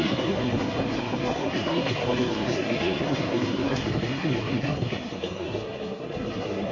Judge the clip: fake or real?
fake